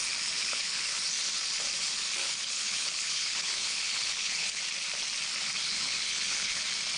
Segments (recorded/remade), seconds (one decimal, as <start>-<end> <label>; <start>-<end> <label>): 0.0-0.4 recorded; 0.4-1.0 remade; 1.0-2.2 recorded; 2.2-4.6 remade; 4.6-5.6 recorded; 5.6-6.6 remade; 6.6-7.0 recorded